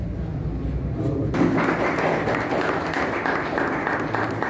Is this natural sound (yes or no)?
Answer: yes